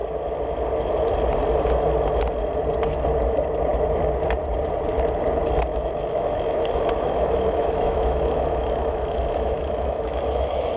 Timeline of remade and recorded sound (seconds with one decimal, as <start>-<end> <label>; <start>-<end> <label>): 0.0-5.7 recorded; 5.7-10.8 remade